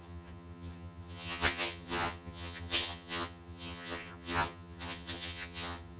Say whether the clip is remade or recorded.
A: remade